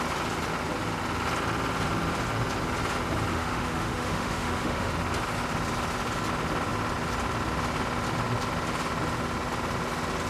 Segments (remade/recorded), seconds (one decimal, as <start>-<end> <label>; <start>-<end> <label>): 0.0-3.3 recorded; 3.3-4.9 remade; 4.9-10.3 recorded